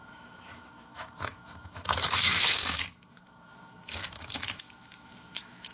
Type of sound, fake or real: fake